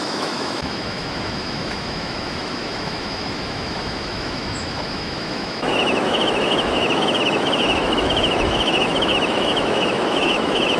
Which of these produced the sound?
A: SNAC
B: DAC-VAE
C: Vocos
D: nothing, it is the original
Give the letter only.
B